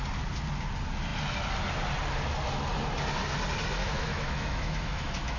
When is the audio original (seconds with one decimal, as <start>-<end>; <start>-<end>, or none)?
0.0-3.8